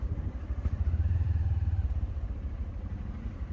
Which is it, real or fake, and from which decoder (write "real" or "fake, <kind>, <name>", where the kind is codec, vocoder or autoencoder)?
fake, vocoder, BigVGAN v2